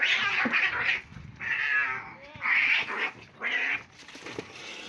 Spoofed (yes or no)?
no